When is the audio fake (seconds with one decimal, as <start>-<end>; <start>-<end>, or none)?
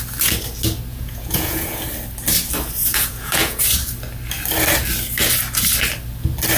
0.9-1.8; 2.8-3.6